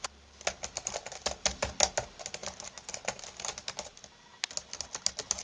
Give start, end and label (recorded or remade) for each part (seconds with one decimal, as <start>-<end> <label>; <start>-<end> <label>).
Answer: 0.0-5.4 recorded